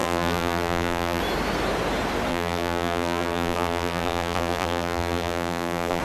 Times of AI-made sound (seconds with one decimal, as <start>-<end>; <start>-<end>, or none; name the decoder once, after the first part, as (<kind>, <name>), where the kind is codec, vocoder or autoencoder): 0.0-1.2 (vocoder, BigVGAN v2); 2.3-6.0